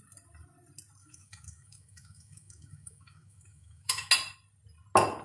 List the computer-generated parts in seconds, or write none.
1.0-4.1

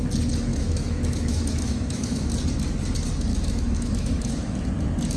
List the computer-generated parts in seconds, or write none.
0.5-2.3; 3.3-4.7

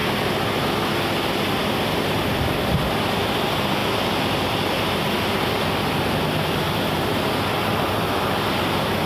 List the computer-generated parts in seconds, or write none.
none

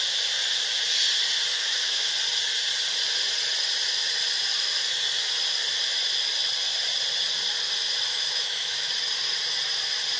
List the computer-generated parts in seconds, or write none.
1.5-2.1; 8.1-8.9